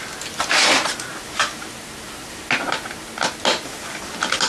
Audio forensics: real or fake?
real